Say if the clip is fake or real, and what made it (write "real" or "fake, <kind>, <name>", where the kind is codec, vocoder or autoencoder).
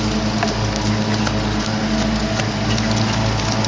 real